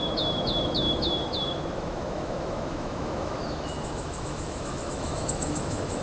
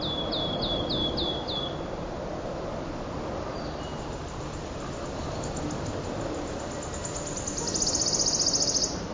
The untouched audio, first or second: second